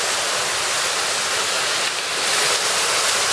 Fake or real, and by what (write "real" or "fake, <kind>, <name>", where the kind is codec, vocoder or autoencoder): real